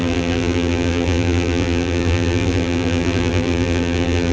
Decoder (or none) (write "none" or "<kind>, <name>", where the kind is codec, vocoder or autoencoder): vocoder, BigVGAN v2